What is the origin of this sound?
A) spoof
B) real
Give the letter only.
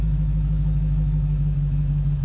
A